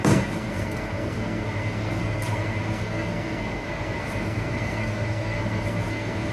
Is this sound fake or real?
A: fake